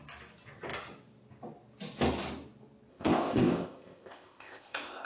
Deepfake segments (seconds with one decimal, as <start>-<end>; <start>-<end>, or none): 2.9-5.1